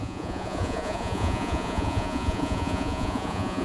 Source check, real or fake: fake